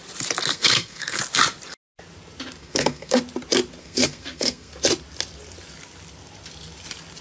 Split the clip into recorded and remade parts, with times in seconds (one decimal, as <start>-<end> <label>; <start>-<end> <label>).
0.0-0.5 recorded; 0.5-1.2 remade; 1.2-2.6 recorded; 2.6-3.2 remade; 3.2-3.8 recorded; 3.8-4.7 remade; 4.7-7.2 recorded